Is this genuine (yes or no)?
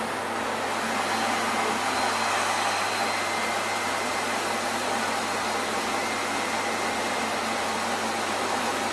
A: yes